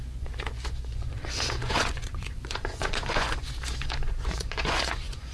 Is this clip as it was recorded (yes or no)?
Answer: no